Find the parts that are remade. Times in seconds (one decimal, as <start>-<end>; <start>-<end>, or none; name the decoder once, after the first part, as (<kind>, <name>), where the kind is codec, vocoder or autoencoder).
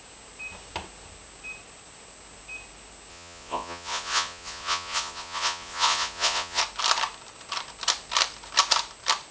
3.1-6.6 (vocoder, Vocos)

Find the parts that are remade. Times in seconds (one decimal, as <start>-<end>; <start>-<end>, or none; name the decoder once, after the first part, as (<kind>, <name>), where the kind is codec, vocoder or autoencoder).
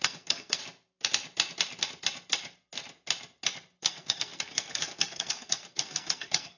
0.0-0.6 (codec, SNAC); 3.8-6.6